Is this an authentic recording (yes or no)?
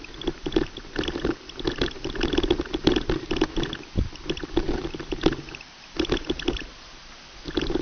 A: yes